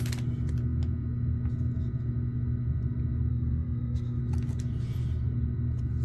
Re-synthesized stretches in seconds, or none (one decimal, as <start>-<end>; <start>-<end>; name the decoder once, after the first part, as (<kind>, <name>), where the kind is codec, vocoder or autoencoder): 3.3-4.2 (codec, SNAC)